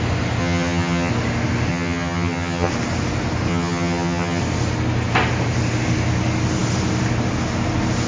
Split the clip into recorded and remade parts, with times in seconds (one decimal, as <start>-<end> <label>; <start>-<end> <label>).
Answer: 0.0-0.4 recorded; 0.4-1.1 remade; 1.1-1.7 recorded; 1.7-2.7 remade; 2.7-3.5 recorded; 3.5-4.4 remade; 4.4-8.1 recorded